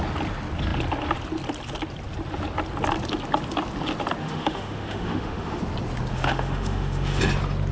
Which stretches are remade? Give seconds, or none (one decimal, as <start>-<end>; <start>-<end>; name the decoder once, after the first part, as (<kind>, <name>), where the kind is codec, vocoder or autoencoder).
4.2-5.6 (autoencoder, DAC-VAE); 6.1-7.2